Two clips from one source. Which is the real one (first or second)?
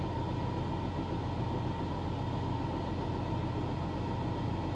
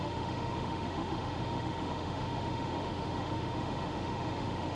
first